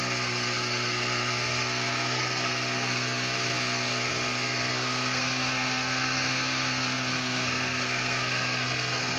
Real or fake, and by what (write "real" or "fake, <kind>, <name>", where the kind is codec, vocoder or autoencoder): fake, codec, SNAC